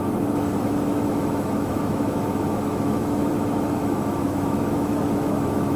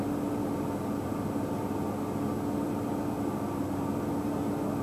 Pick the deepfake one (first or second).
first